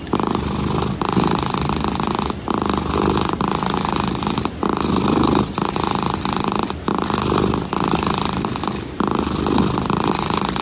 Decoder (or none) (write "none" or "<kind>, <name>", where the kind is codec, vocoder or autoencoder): none